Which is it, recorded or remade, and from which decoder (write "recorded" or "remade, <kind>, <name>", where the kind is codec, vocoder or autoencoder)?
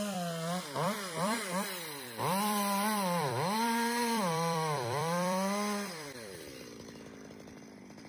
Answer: remade, vocoder, BigVGAN v2